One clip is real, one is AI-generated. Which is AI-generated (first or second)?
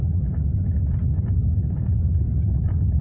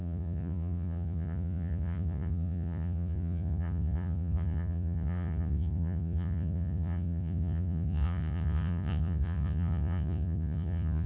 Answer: second